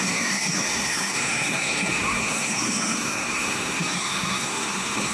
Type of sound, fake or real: fake